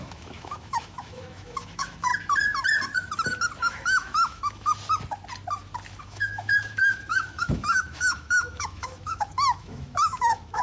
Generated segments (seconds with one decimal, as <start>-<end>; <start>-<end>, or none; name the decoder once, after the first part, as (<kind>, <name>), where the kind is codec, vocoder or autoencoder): 0.0-2.1 (autoencoder, DAC-VAE); 3.6-4.7; 6.0-10.6